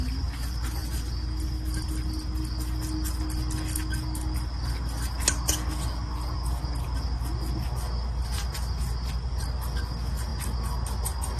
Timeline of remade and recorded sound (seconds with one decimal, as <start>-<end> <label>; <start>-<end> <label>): 0.0-11.4 recorded